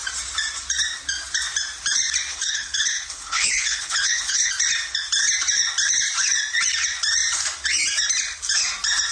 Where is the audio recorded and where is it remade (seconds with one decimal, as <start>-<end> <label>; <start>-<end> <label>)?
0.0-2.3 recorded; 2.3-4.5 remade; 4.5-9.1 recorded

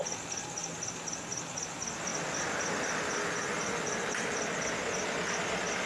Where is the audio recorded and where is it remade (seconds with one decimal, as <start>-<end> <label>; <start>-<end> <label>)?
0.0-5.9 recorded

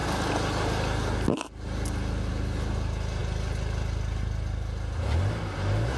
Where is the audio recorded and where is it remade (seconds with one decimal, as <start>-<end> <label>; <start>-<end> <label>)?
0.0-6.0 recorded